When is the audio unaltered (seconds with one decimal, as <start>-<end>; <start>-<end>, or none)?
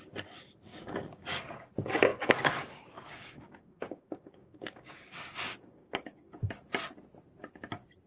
0.0-0.7; 1.4-2.1; 6.5-8.1